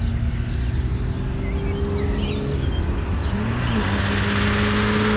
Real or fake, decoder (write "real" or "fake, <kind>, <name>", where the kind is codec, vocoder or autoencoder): real